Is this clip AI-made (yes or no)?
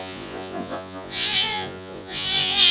yes